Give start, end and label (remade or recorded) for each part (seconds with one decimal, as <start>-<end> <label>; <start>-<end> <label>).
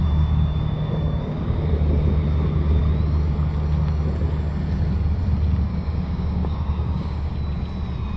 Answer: 0.0-1.7 remade; 1.7-5.7 recorded; 5.7-7.3 remade; 7.3-8.2 recorded